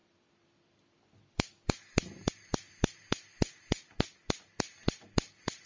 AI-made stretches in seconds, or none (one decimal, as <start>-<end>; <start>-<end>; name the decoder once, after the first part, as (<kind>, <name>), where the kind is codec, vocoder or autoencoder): none